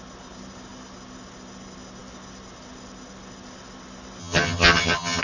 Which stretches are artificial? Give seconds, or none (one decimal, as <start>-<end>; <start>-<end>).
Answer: 4.2-5.2